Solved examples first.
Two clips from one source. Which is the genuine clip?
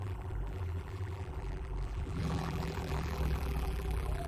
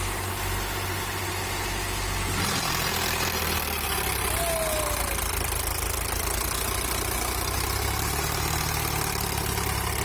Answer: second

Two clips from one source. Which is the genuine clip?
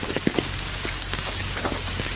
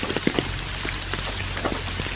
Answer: second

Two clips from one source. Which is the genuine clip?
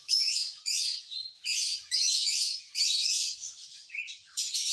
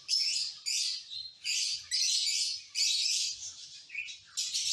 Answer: second